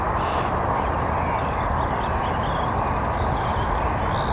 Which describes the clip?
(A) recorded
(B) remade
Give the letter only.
A